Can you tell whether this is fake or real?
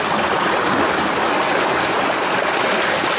real